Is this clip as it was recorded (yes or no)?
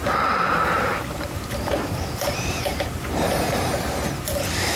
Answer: no